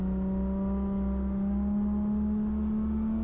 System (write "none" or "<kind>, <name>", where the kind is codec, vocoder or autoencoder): none